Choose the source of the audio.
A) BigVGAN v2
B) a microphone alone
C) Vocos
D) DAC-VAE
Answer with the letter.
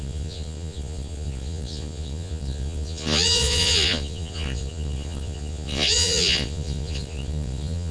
C